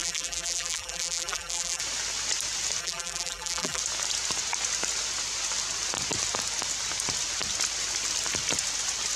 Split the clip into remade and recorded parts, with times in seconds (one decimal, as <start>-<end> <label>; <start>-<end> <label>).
0.0-1.8 remade; 1.8-2.8 recorded; 2.8-3.8 remade; 3.8-9.2 recorded